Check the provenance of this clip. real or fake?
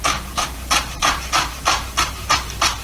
fake